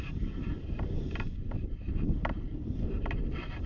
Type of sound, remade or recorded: recorded